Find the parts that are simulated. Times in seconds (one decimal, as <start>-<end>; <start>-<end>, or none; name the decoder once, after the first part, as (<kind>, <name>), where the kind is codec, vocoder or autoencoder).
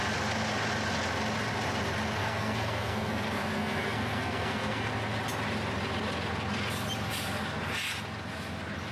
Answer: 2.2-4.9 (codec, SNAC)